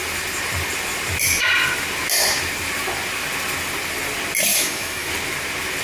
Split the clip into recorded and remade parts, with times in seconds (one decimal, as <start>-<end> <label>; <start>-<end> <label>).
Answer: 0.0-4.5 recorded; 4.5-5.1 remade; 5.1-5.8 recorded

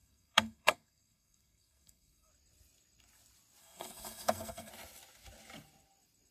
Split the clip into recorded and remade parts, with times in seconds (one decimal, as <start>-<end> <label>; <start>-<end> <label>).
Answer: 0.0-2.3 remade; 2.3-3.6 recorded; 3.6-4.7 remade; 4.7-6.3 recorded

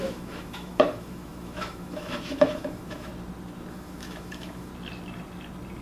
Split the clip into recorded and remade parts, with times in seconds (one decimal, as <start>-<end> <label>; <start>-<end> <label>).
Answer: 0.0-3.1 remade; 3.1-3.7 recorded; 3.7-4.7 remade; 4.7-5.8 recorded

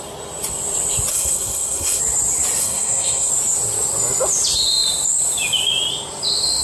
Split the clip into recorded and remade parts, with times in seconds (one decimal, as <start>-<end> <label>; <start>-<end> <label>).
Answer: 0.0-1.1 recorded; 1.1-2.0 remade; 2.0-2.6 recorded; 2.6-3.3 remade; 3.3-6.6 recorded

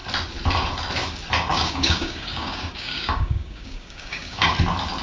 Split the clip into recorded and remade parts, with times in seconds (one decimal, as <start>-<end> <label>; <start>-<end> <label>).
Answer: 0.0-1.5 recorded; 1.5-4.5 remade; 4.5-5.0 recorded

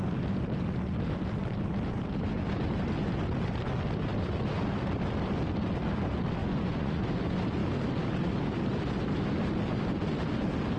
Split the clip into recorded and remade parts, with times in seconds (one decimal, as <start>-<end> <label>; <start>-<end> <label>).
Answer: 0.0-6.4 recorded; 6.4-7.0 remade; 7.0-10.8 recorded